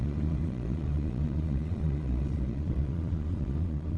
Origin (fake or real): fake